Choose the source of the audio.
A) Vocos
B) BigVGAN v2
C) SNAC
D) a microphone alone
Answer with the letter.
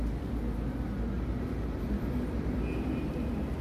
D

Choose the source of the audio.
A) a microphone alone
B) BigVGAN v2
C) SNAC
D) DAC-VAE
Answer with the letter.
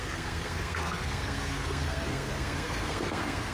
C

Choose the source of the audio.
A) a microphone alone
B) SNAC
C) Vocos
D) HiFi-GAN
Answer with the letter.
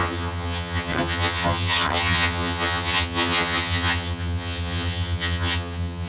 D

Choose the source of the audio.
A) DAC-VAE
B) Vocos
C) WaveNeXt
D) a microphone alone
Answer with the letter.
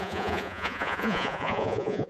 B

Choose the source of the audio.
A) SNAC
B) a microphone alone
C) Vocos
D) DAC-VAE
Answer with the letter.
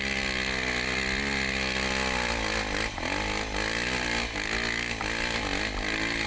B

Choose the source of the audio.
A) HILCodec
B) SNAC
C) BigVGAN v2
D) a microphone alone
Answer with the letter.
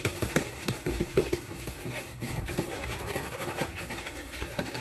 B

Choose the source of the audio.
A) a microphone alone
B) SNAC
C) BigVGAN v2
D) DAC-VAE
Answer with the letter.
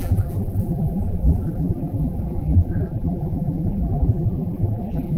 C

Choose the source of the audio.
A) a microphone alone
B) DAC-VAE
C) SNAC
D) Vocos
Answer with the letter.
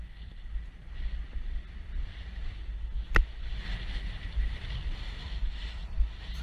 A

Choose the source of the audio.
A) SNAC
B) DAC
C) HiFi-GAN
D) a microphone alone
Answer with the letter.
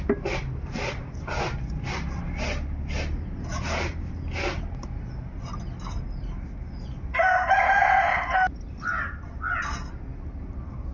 D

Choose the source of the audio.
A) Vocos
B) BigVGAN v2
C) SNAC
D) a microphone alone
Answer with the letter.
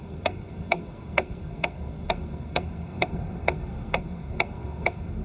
C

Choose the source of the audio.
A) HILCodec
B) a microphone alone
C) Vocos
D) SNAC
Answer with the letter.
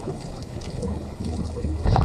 A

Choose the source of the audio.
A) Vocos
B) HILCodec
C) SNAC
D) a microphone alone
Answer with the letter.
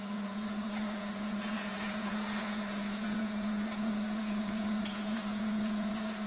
A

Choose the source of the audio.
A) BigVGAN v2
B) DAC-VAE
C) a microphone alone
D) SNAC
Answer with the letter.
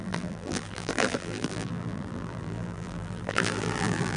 A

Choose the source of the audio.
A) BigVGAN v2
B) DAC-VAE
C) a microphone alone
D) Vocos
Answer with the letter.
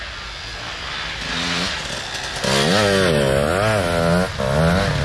C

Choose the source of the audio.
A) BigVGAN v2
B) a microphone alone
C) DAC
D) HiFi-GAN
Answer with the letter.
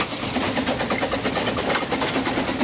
B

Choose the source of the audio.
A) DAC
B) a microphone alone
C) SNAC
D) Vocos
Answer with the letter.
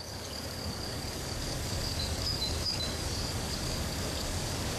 A